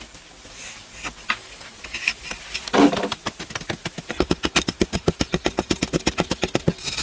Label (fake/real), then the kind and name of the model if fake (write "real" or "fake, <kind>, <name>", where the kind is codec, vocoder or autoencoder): real